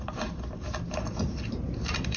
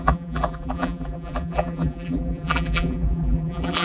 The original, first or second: first